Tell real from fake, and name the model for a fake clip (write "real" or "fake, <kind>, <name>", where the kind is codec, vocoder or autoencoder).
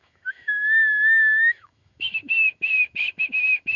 fake, autoencoder, DAC-VAE